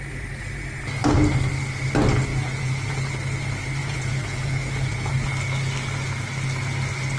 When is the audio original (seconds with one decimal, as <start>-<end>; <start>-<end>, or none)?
0.0-2.3; 2.9-3.8; 5.1-7.2

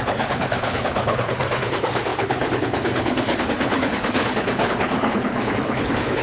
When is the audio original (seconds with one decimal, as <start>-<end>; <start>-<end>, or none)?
none

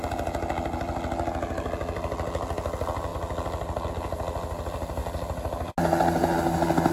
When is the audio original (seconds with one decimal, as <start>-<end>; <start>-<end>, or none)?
0.0-5.0; 5.7-6.9

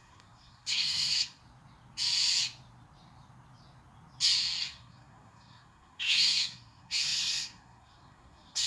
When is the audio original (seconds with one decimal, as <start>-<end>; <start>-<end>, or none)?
1.4-4.6

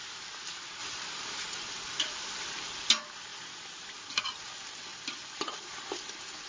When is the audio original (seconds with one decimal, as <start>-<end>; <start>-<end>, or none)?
0.0-0.8; 2.9-3.3; 4.2-4.9; 5.7-6.5

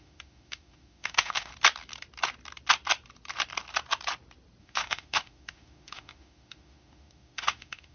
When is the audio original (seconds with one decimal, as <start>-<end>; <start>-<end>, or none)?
1.5-4.6

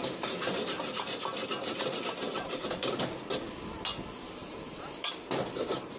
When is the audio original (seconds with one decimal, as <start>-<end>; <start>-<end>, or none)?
0.0-2.3; 3.0-4.4

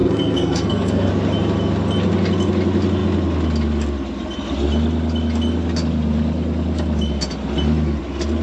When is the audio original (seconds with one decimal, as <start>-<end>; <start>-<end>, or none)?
1.1-8.4